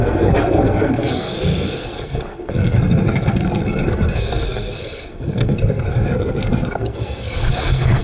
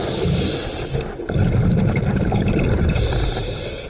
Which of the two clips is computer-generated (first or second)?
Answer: first